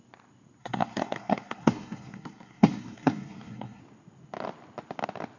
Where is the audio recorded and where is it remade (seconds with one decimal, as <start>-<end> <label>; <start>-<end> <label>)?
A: 0.0-0.6 recorded; 0.6-3.8 remade; 3.8-5.4 recorded